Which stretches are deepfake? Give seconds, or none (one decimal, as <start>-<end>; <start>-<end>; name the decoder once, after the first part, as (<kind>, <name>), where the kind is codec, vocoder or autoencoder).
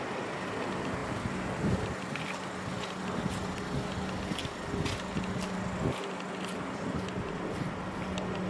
none